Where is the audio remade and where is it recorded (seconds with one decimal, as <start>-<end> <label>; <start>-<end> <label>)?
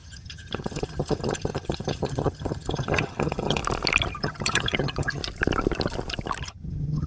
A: 0.0-3.6 remade; 3.6-4.1 recorded; 4.1-5.2 remade; 5.2-6.4 recorded; 6.4-7.1 remade